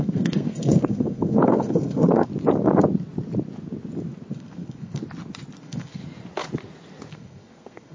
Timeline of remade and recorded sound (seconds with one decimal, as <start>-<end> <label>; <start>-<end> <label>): 0.0-2.3 remade; 2.3-4.3 recorded; 4.3-5.0 remade; 5.0-5.6 recorded; 5.6-6.0 remade; 6.0-7.1 recorded; 7.1-7.9 remade